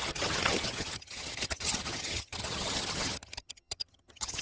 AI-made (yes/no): yes